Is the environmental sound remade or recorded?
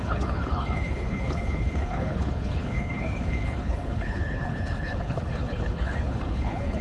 remade